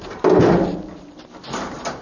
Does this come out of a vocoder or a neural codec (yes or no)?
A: yes